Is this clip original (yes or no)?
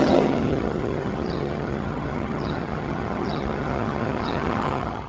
no